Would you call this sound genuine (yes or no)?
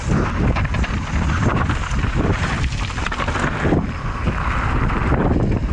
yes